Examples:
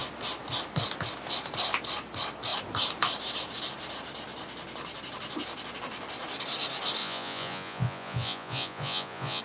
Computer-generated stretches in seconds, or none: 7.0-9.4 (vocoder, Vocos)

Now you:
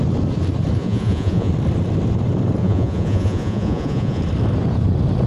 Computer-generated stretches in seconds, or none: 0.8-1.5 (vocoder, Vocos); 2.6-4.2

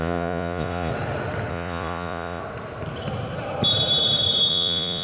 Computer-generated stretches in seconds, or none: 0.0-0.9 (vocoder, Vocos); 1.5-2.4; 4.5-5.0

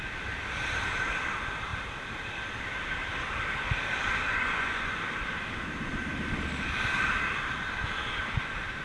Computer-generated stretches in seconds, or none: 4.3-5.0 (vocoder, Vocos)

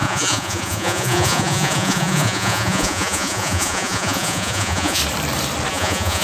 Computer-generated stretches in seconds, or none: 0.0-5.0 (vocoder, Vocos); 5.7-6.2

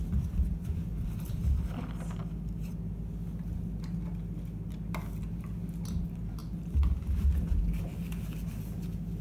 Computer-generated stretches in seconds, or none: none